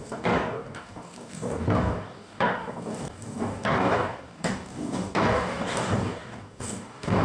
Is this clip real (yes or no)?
no